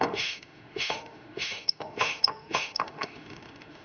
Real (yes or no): no